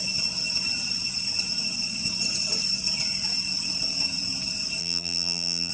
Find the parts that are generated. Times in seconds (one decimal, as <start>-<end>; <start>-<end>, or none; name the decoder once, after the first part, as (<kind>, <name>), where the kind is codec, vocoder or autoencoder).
4.8-5.7 (vocoder, BigVGAN v2)

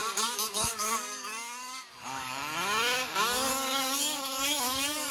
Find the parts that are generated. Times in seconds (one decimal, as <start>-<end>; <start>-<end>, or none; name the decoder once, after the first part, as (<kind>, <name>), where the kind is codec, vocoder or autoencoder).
0.0-5.1 (codec, DAC)

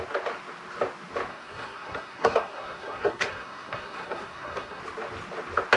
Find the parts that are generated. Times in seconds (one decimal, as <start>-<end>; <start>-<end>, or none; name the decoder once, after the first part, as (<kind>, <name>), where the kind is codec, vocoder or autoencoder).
1.3-4.8 (codec, SNAC)

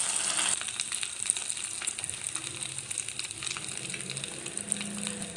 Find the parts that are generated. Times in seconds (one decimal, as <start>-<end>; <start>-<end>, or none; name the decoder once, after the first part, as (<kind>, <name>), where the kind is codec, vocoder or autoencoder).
none